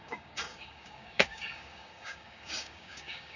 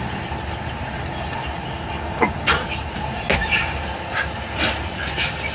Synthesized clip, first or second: first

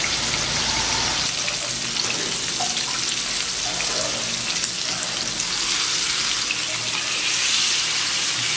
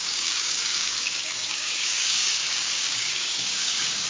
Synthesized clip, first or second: second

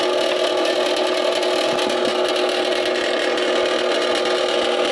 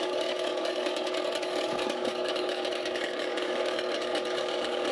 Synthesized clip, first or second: second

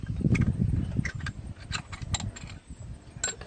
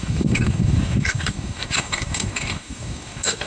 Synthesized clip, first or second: second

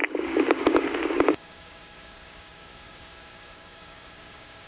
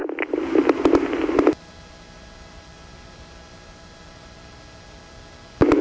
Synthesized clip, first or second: first